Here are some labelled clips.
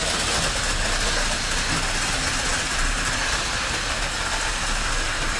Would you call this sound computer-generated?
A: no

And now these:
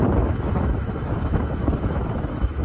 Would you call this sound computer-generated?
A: yes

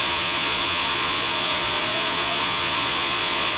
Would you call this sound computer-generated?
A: yes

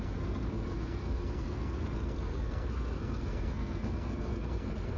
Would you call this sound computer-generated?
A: yes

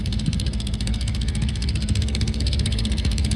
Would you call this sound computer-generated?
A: yes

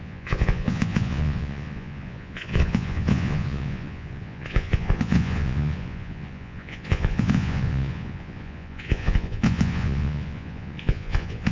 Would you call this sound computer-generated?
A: yes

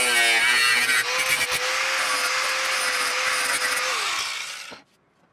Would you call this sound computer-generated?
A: no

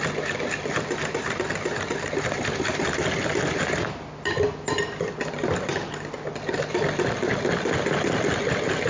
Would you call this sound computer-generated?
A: no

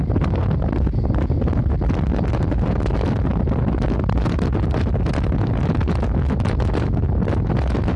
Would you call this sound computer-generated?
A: no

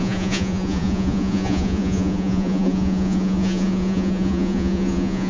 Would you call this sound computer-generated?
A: yes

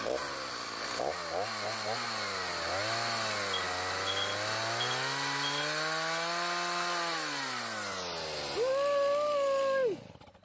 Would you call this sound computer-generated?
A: no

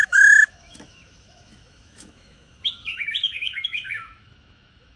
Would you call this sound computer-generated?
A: yes